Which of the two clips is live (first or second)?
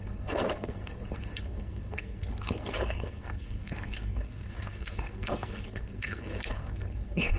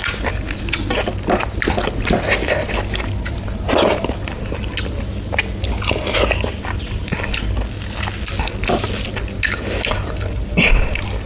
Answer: second